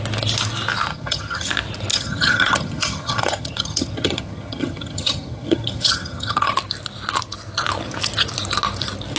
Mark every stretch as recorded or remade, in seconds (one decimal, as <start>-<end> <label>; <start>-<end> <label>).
0.0-0.9 recorded; 0.9-1.5 remade; 1.5-1.9 recorded; 1.9-6.5 remade; 6.5-9.2 recorded